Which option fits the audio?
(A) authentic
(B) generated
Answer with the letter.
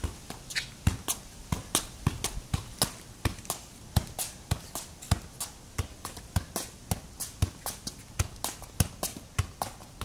A